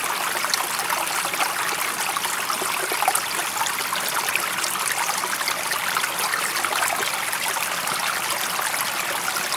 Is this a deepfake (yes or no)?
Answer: no